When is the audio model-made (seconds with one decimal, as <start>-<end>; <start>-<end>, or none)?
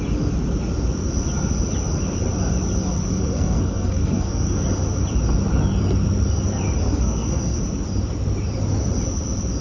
3.1-4.6; 6.8-7.6